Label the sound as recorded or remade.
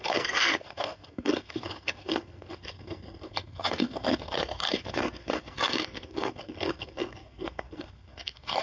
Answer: remade